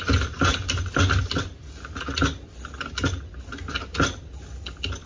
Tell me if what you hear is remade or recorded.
recorded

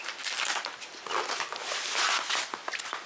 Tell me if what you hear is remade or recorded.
recorded